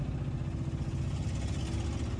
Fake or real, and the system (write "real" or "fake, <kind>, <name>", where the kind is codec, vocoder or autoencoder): real